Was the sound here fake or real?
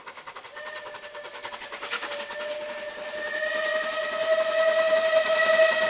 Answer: real